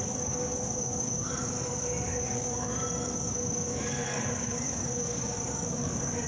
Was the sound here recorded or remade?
remade